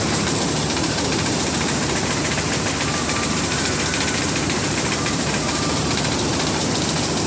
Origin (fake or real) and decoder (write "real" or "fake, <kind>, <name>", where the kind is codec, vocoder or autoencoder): fake, vocoder, BigVGAN v2